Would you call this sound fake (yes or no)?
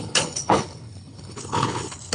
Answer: yes